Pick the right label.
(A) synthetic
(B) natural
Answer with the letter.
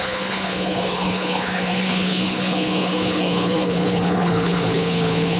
A